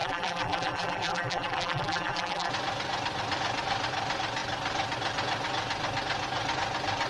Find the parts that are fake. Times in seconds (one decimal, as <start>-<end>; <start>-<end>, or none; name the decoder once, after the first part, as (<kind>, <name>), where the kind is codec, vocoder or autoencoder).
0.0-2.5 (vocoder, BigVGAN v2)